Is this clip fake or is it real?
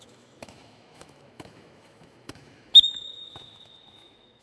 fake